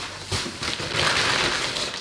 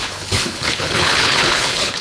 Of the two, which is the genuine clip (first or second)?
first